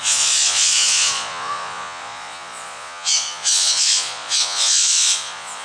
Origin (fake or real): fake